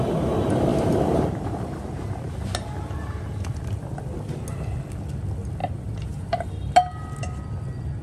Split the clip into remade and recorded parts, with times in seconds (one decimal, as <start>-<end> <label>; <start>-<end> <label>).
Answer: 0.0-0.7 recorded; 0.7-2.3 remade; 2.3-5.6 recorded; 5.6-6.5 remade; 6.5-8.0 recorded